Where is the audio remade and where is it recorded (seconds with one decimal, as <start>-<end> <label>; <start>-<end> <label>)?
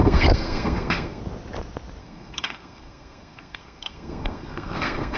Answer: 0.0-1.2 remade; 1.2-2.0 recorded; 2.0-5.2 remade